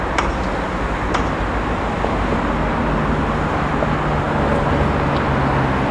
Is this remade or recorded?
recorded